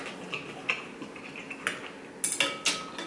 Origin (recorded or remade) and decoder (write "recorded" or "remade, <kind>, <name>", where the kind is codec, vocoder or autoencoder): recorded